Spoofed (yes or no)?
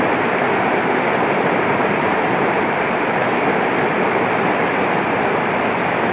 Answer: no